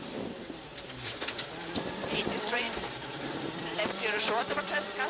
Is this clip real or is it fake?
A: fake